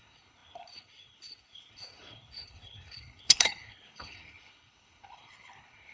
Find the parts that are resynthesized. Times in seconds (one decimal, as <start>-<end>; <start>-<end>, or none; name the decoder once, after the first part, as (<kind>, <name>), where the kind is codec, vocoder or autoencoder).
0.0-5.9 (codec, HILCodec)